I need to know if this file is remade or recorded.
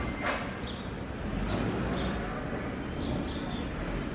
recorded